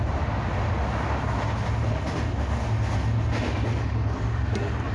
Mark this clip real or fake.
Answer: real